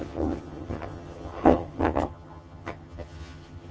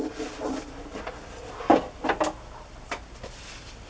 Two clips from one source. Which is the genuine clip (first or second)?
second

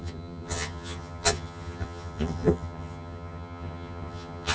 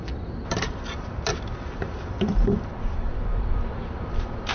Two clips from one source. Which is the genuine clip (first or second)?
second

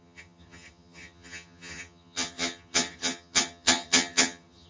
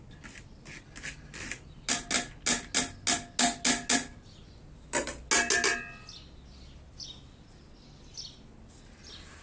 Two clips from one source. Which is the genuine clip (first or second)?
second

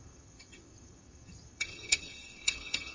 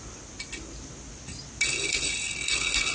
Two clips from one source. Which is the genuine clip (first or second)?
second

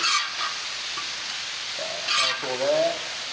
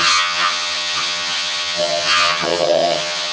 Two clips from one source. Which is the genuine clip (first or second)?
first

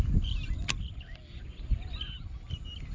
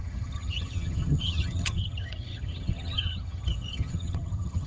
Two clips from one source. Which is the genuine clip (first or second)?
first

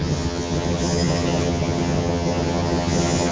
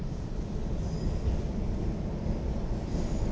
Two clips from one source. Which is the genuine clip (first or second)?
second